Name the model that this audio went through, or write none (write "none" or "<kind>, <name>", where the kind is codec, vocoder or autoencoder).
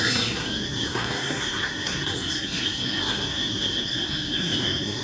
codec, SNAC